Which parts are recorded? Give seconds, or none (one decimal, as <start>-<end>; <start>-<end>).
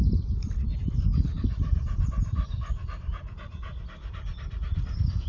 0.0-5.3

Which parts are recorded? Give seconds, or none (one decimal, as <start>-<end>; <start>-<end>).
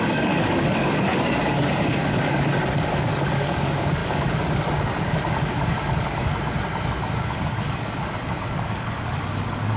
6.3-7.2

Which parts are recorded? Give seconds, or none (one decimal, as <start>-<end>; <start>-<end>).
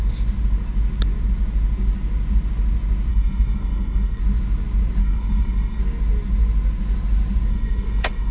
0.0-3.1; 4.2-5.0; 5.8-7.5